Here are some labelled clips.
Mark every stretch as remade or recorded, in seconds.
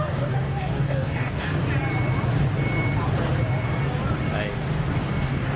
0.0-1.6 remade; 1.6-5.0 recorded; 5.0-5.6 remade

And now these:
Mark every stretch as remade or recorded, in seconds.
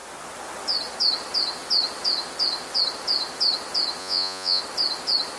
0.0-4.0 recorded; 4.0-4.6 remade; 4.6-5.4 recorded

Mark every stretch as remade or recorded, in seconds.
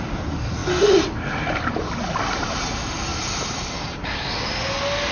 0.0-5.1 recorded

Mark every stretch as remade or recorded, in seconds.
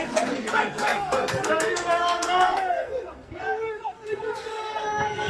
0.0-5.3 remade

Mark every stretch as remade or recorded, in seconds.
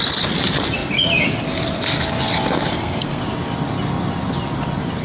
0.0-2.7 recorded; 2.7-3.2 remade; 3.2-5.0 recorded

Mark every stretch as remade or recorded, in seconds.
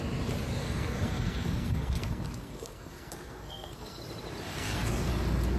0.0-0.6 recorded; 0.6-4.0 remade; 4.0-4.5 recorded; 4.5-5.1 remade; 5.1-5.6 recorded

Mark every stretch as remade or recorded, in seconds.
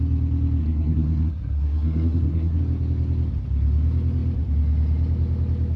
0.0-0.6 recorded; 0.6-2.6 remade; 2.6-5.8 recorded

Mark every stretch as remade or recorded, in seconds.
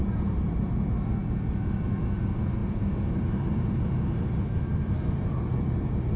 0.0-0.7 remade; 0.7-2.6 recorded; 2.6-6.2 remade